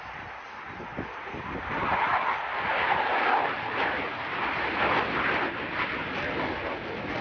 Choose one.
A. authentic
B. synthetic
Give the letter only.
A